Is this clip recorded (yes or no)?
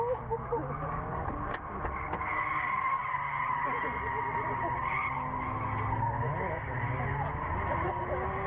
yes